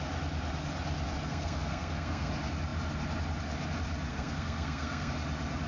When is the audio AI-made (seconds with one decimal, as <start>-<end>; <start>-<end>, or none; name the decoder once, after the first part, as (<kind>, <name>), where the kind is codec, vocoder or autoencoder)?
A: 1.3-2.3 (codec, SNAC); 4.1-5.1